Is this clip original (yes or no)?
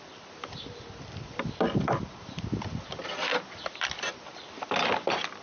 yes